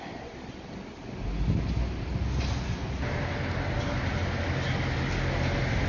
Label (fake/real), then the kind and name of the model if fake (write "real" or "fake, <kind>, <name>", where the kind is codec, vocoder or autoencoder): real